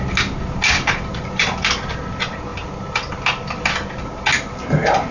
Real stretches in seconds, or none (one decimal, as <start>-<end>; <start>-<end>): 0.0-5.1